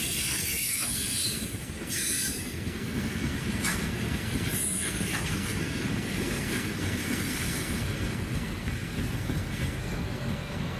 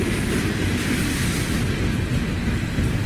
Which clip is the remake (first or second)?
first